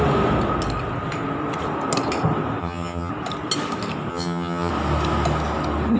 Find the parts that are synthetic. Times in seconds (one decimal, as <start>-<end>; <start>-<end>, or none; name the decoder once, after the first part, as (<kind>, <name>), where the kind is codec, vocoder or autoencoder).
2.6-3.1 (vocoder, HiFi-GAN); 4.1-4.7